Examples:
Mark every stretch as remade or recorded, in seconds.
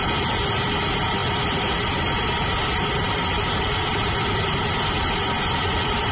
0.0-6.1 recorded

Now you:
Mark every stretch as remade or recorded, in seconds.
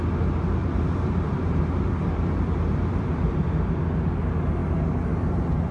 0.0-0.6 recorded; 0.6-3.8 remade; 3.8-5.7 recorded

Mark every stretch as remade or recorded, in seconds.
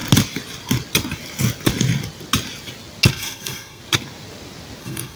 0.0-3.1 recorded; 3.1-3.8 remade; 3.8-4.8 recorded; 4.8-5.2 remade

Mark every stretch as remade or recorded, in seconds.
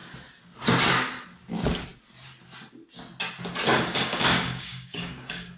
0.0-3.7 recorded; 3.7-5.6 remade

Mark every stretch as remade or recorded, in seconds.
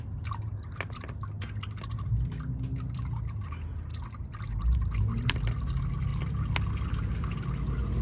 0.0-8.0 recorded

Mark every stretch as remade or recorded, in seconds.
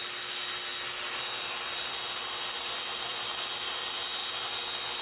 0.0-5.0 recorded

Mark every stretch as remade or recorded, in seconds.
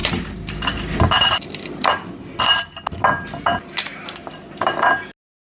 0.0-1.0 remade; 1.0-4.2 recorded; 4.2-4.8 remade; 4.8-5.4 recorded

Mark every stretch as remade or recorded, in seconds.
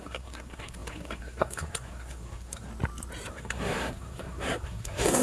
0.0-2.7 remade; 2.7-3.3 recorded; 3.3-5.2 remade